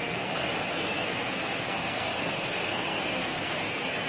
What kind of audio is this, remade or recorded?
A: remade